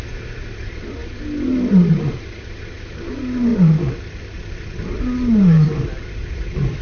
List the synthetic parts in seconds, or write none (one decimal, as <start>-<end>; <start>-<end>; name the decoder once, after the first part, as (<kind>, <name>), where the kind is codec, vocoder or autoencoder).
none